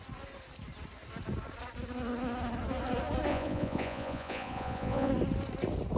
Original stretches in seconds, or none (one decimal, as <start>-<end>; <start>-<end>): 0.0-3.3; 5.1-6.0